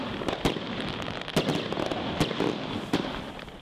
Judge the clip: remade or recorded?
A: recorded